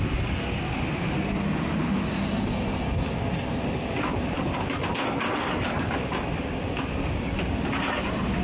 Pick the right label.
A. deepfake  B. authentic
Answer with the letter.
B